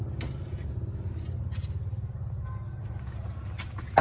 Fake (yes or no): no